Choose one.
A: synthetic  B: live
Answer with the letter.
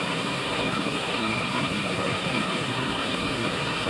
A